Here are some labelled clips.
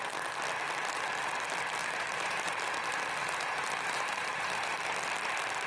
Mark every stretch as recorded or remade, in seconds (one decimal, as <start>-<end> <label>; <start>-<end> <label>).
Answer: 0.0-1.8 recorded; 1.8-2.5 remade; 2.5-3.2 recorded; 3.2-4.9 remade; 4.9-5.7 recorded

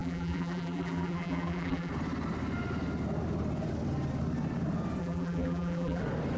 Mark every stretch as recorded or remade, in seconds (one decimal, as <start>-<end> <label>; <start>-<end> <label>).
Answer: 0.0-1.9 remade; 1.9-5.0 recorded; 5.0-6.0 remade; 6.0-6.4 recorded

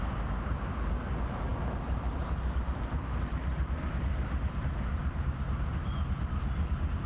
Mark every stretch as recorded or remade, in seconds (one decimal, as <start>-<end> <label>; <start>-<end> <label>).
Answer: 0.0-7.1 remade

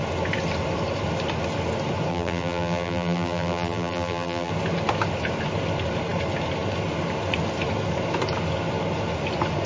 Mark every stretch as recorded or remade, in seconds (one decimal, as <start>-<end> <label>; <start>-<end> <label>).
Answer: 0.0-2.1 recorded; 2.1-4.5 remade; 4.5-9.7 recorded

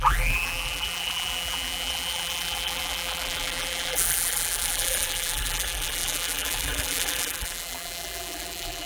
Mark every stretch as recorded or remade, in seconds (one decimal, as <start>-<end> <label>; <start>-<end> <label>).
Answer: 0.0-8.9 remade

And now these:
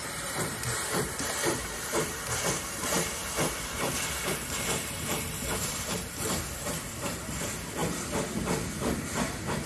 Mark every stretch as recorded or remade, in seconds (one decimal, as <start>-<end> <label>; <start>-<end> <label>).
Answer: 0.0-3.2 remade; 3.2-3.7 recorded; 3.7-7.8 remade; 7.8-9.7 recorded